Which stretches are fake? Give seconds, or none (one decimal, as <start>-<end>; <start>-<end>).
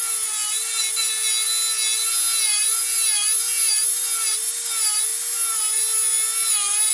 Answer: none